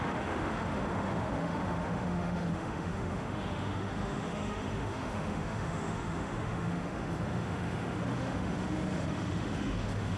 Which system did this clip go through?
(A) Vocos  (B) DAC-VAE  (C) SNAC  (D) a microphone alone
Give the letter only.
B